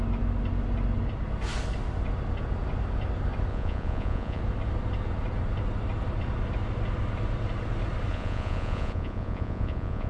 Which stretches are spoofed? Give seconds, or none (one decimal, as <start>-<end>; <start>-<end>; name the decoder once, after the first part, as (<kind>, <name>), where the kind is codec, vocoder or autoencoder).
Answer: 3.5-4.4 (vocoder, Vocos); 8.1-10.1